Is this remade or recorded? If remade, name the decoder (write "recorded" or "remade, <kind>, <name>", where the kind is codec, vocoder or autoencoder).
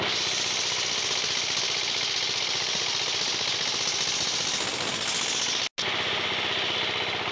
recorded